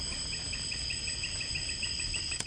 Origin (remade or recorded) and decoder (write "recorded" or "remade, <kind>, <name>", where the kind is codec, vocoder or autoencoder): recorded